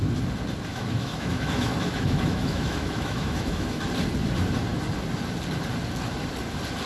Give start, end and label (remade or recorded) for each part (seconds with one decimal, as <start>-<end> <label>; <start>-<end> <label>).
0.0-0.7 recorded; 0.7-3.8 remade; 3.8-6.9 recorded